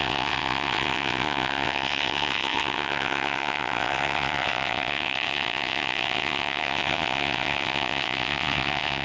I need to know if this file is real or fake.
fake